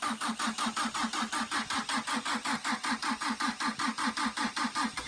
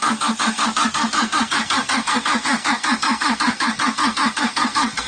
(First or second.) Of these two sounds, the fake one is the second